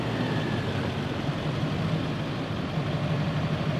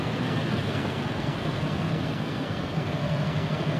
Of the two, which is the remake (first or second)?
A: second